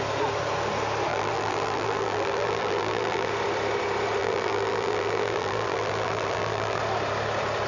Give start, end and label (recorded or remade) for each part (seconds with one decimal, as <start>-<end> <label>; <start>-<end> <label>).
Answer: 0.0-1.1 recorded; 1.1-3.3 remade; 3.3-4.2 recorded; 4.2-6.8 remade; 6.8-7.7 recorded